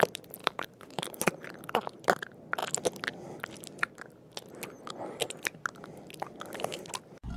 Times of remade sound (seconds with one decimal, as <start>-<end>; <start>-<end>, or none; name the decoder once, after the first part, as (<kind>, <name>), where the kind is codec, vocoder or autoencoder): 0.4-1.6 (vocoder, BigVGAN v2)